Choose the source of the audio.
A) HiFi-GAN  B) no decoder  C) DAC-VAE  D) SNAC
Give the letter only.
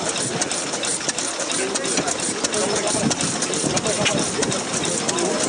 B